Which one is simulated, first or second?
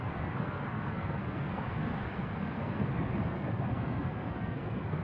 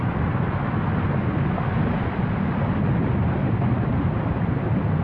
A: first